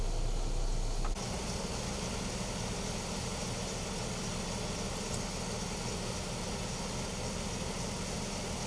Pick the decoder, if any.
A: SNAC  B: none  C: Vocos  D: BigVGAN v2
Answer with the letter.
B